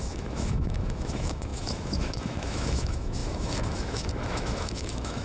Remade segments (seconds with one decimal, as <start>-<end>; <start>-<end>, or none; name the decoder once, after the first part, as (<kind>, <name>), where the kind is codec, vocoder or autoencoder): 0.0-5.2 (autoencoder, DAC-VAE)